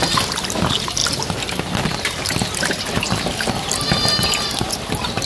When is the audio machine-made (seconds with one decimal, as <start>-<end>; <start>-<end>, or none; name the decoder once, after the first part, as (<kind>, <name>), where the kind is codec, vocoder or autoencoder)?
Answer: none